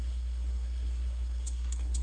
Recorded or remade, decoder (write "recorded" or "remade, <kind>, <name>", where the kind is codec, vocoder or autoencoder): remade, codec, SNAC